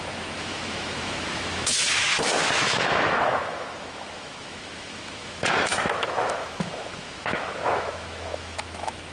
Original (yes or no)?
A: no